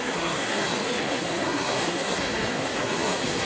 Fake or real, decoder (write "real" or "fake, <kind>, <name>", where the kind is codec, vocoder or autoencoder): fake, codec, SNAC